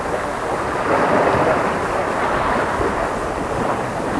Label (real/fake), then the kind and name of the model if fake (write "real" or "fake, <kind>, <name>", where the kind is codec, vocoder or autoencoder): real